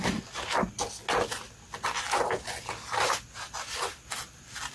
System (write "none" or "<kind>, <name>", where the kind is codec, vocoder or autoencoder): none